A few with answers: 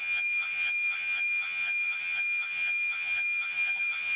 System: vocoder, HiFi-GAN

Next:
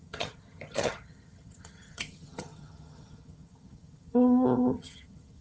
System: vocoder, HiFi-GAN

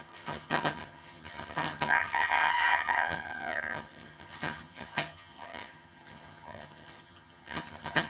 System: vocoder, HiFi-GAN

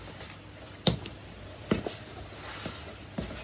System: none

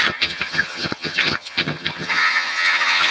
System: vocoder, HiFi-GAN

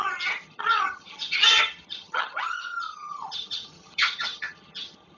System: vocoder, HiFi-GAN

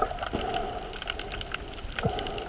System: none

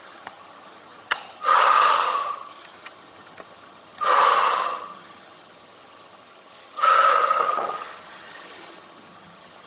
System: vocoder, HiFi-GAN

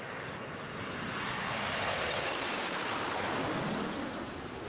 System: none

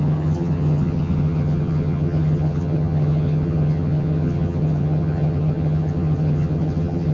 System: vocoder, HiFi-GAN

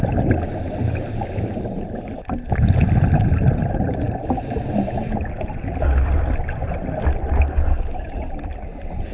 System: none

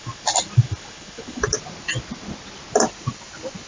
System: none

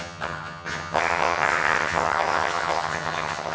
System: vocoder, HiFi-GAN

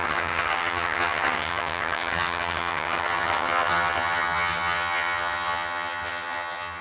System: vocoder, HiFi-GAN